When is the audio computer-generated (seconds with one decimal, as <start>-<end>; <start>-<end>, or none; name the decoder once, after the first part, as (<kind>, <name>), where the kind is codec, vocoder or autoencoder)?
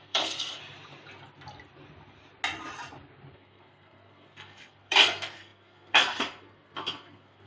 0.0-0.6 (codec, SNAC); 3.3-7.5